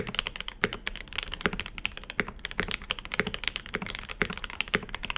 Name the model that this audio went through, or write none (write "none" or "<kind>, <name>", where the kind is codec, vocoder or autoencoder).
none